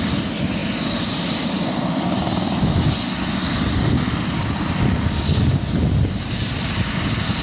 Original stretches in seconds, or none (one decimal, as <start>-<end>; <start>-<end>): 0.0-7.4